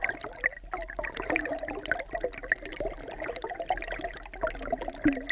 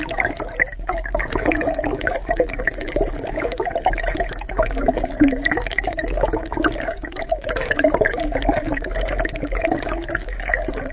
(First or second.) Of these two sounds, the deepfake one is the second